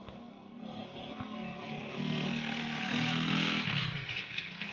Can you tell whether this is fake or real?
fake